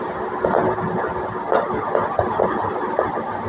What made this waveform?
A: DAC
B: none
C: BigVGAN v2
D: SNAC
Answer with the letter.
B